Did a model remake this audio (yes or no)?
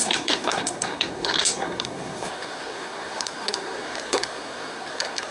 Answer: yes